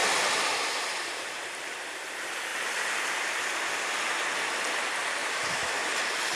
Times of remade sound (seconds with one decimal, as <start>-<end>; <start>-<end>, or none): 5.2-5.9